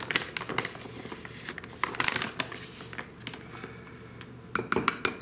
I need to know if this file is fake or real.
real